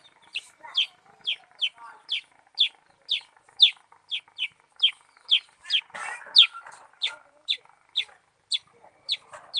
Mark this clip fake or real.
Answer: real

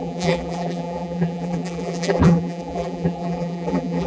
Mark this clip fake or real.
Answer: fake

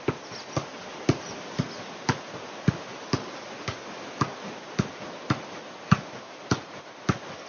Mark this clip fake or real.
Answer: real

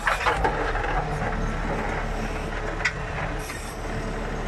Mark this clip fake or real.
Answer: real